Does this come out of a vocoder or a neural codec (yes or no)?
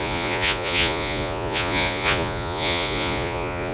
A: yes